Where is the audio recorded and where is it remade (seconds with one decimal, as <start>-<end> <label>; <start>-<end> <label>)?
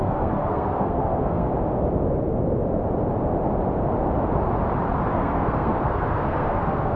0.0-1.5 remade; 1.5-5.1 recorded; 5.1-7.0 remade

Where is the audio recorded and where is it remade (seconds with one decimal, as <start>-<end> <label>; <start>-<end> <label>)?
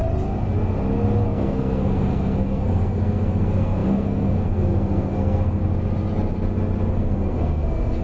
0.0-1.2 recorded; 1.2-5.6 remade; 5.6-6.9 recorded; 6.9-8.0 remade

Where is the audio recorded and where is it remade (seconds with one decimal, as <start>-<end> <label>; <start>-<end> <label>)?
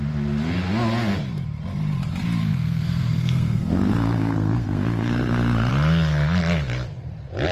0.0-2.4 recorded; 2.4-5.7 remade; 5.7-7.5 recorded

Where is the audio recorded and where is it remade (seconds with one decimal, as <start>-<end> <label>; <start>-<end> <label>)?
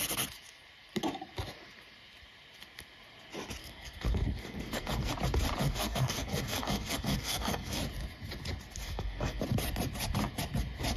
0.0-3.6 recorded; 3.6-5.1 remade; 5.1-5.6 recorded; 5.6-7.8 remade; 7.8-8.8 recorded; 8.8-9.4 remade; 9.4-11.0 recorded